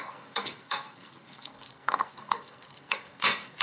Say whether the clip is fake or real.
fake